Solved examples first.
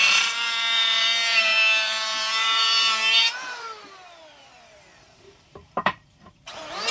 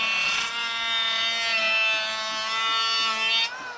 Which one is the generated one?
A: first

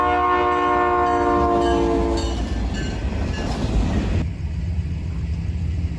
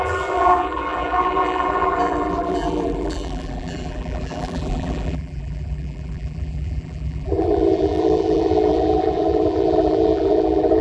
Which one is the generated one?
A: second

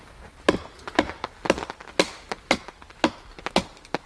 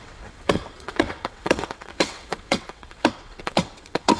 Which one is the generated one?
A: second